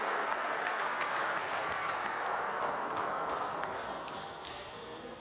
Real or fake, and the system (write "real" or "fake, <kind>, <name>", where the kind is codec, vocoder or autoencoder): fake, codec, SNAC